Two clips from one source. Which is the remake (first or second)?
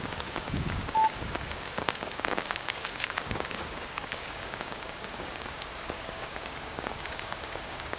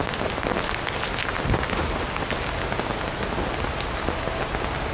first